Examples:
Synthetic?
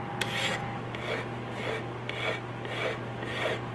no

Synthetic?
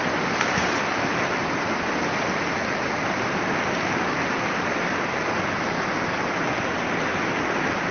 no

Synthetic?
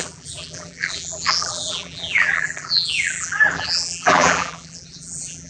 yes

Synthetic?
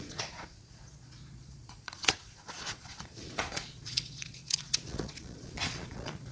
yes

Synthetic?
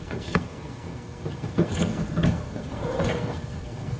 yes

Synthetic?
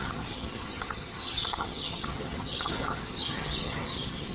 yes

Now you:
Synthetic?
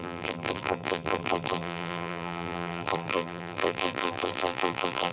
yes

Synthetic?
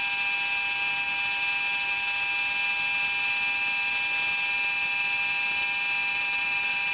no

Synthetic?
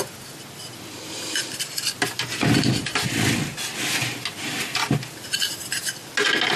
no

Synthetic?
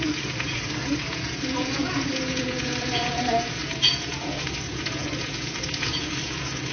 yes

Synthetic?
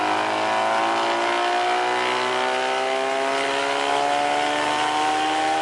no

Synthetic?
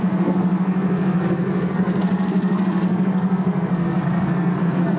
yes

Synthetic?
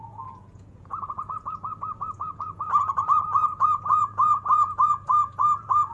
yes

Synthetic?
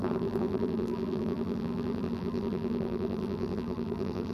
yes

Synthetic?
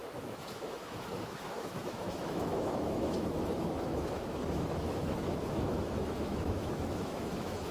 yes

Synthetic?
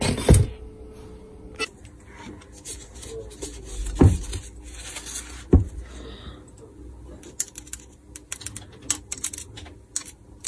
no